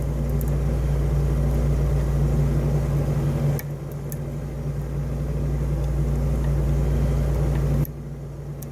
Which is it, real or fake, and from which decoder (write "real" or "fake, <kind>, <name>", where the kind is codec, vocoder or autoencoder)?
real